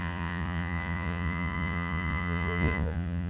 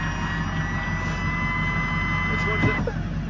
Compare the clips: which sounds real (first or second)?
second